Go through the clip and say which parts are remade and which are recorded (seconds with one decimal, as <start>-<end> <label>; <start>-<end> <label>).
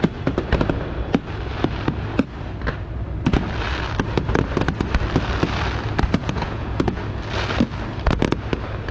0.0-6.2 recorded; 6.2-7.0 remade; 7.0-8.9 recorded